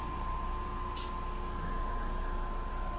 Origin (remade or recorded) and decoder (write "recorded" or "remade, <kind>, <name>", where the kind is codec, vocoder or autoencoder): recorded